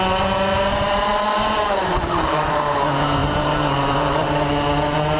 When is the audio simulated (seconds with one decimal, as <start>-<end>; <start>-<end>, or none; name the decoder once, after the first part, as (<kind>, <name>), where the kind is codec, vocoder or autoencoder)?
0.5-2.5 (vocoder, BigVGAN v2); 3.2-4.5